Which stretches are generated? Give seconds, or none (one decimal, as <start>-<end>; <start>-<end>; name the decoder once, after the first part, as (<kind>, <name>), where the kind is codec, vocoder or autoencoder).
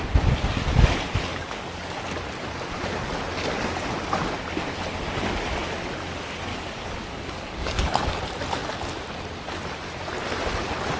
1.3-2.0 (codec, DAC); 6.5-8.2